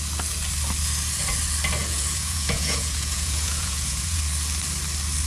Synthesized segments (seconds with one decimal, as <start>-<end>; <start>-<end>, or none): 1.8-4.2

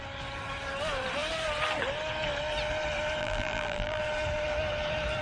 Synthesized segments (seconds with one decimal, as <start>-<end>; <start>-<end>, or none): 3.2-4.0

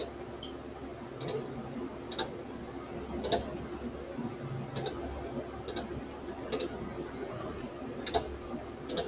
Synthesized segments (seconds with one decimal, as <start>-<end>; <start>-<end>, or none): 7.2-7.7

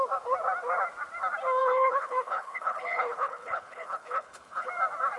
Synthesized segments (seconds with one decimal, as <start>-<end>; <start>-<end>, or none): 1.6-4.7

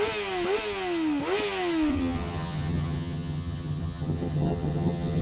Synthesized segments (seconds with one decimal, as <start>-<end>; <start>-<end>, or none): 1.9-5.2

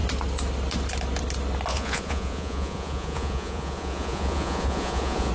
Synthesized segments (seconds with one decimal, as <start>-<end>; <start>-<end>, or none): 1.7-5.3

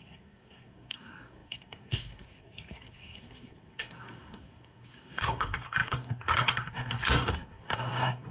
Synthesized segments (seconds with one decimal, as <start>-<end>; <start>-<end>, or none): 0.0-8.3